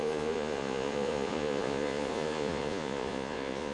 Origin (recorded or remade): remade